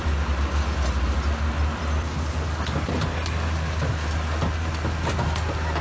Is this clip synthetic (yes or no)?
no